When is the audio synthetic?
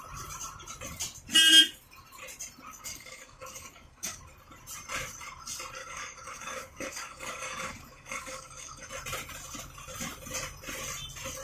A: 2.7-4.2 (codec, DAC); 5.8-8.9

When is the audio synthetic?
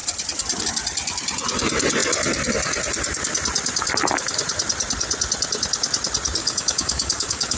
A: 6.4-7.6 (codec, DAC)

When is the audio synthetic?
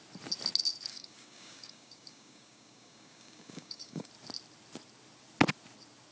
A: 0.9-4.1 (codec, DAC)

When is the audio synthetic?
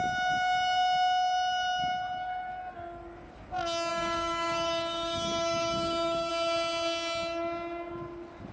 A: 3.9-6.3 (codec, DAC)